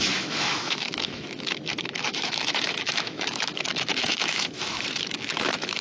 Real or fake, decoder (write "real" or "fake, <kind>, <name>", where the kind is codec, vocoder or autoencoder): fake, autoencoder, DAC-VAE